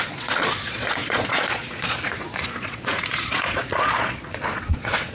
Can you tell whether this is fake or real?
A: fake